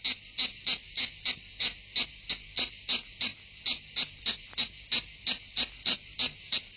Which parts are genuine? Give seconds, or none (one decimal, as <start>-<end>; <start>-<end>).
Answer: 0.0-6.8